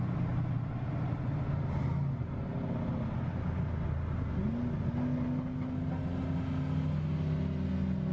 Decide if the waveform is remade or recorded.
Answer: recorded